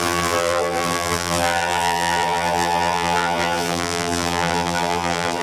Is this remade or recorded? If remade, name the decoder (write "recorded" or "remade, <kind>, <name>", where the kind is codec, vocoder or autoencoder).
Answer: remade, vocoder, BigVGAN v2